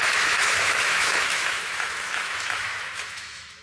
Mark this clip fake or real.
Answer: fake